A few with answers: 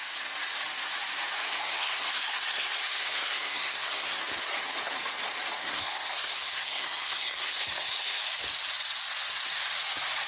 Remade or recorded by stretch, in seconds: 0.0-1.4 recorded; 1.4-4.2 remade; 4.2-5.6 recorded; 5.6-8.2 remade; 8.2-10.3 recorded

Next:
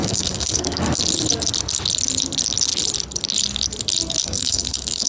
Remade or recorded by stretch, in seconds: 0.0-1.0 remade; 1.0-4.2 recorded; 4.2-5.1 remade

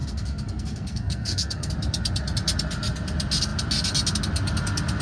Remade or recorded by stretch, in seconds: 0.0-1.7 remade; 1.7-5.0 recorded

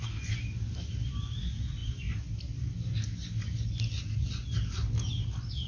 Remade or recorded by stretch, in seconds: 0.0-5.7 recorded

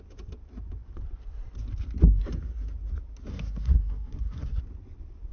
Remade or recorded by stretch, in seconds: 0.0-3.3 recorded; 3.3-4.6 remade; 4.6-5.3 recorded

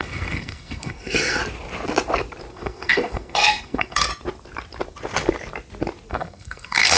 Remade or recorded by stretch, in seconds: 0.0-1.4 remade; 1.4-2.5 recorded; 2.5-4.1 remade; 4.1-6.1 recorded; 6.1-7.0 remade

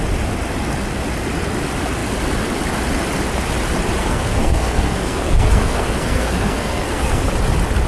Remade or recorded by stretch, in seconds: 0.0-4.0 recorded; 4.0-7.3 remade; 7.3-7.9 recorded